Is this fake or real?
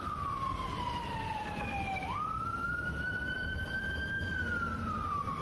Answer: fake